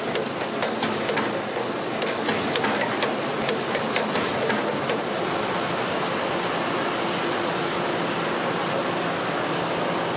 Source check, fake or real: real